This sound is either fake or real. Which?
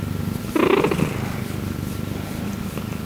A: real